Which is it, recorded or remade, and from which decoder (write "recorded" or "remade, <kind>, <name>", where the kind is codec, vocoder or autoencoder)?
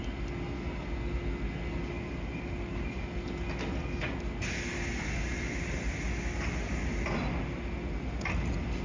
recorded